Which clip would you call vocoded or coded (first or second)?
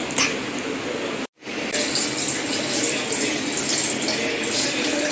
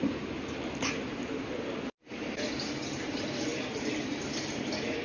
second